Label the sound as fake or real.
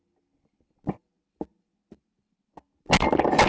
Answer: real